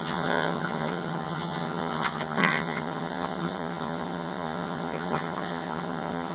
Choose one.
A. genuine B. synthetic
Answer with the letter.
B